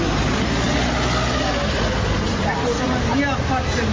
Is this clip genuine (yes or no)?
yes